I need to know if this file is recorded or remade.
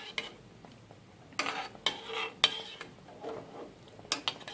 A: recorded